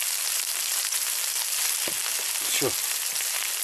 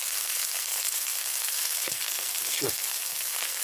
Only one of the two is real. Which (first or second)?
first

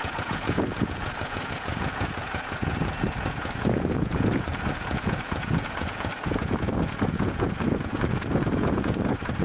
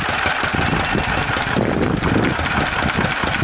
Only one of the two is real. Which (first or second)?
second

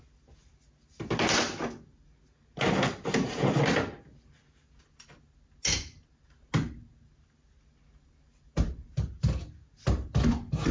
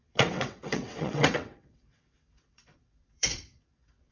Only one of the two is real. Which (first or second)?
first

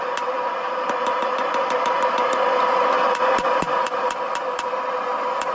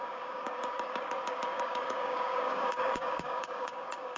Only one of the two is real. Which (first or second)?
first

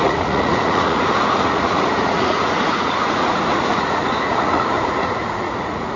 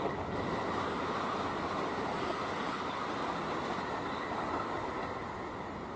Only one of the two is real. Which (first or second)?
second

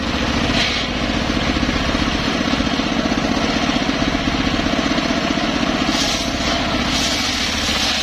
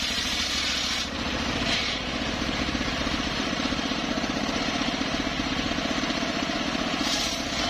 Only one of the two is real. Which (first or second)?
first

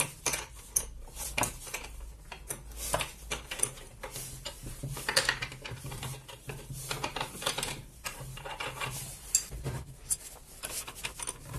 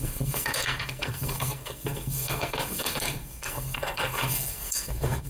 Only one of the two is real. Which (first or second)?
first